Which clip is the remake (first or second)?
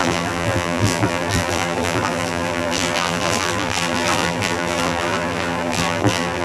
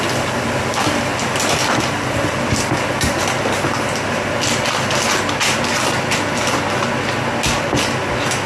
first